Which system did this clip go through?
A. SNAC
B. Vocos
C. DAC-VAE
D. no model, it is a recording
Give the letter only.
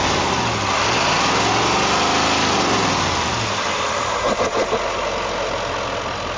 D